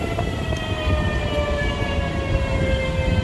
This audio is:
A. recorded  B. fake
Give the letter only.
A